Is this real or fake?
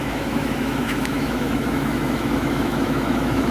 fake